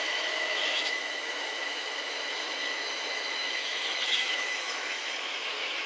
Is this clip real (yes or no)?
no